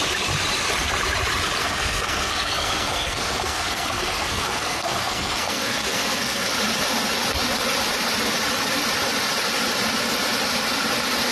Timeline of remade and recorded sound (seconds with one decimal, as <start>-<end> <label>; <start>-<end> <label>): 0.0-1.6 recorded; 1.6-6.5 remade; 6.5-11.3 recorded